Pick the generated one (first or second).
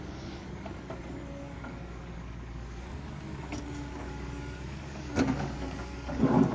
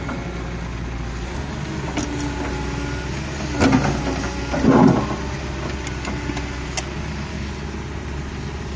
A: first